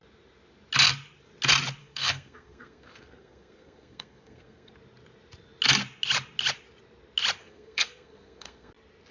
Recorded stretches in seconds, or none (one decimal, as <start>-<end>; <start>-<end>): 0.0-1.8; 4.7-7.4; 8.7-9.1